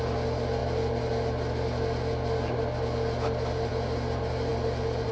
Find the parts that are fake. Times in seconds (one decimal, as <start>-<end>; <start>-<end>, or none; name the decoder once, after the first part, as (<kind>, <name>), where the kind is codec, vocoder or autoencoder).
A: none